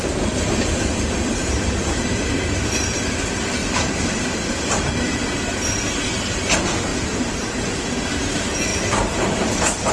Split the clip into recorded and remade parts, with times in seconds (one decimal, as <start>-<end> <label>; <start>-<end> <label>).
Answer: 0.0-1.4 recorded; 1.4-3.2 remade; 3.2-3.6 recorded; 3.6-4.5 remade; 4.5-6.9 recorded; 6.9-7.7 remade; 7.7-8.7 recorded; 8.7-9.9 remade